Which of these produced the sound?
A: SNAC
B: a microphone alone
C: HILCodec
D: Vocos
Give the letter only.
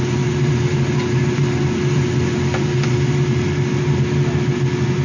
B